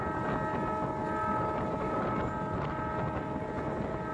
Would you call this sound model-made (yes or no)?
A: no